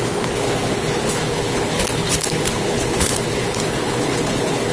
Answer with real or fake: fake